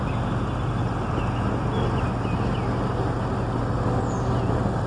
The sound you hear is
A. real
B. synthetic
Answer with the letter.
A